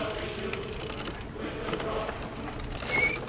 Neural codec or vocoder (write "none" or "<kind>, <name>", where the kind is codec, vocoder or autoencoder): none